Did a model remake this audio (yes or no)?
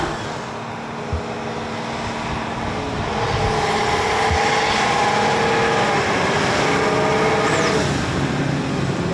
no